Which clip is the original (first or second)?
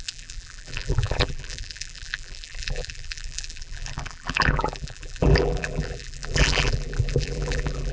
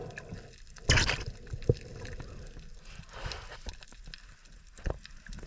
second